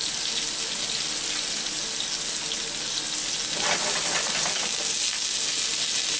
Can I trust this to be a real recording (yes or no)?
yes